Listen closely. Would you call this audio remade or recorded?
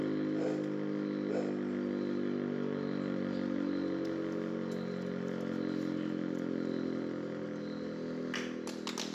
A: recorded